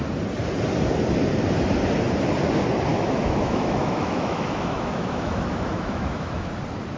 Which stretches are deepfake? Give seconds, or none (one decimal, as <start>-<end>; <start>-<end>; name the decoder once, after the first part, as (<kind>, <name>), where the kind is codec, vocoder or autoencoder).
2.9-6.5 (autoencoder, DAC-VAE)